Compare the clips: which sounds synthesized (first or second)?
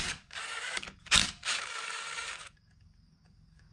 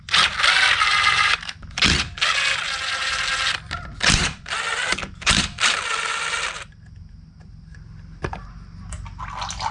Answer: first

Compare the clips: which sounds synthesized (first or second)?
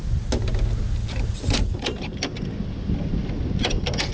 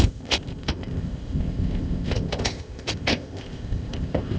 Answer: second